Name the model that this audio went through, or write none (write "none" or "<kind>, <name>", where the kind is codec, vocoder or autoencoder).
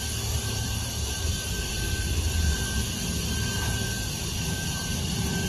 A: vocoder, BigVGAN v2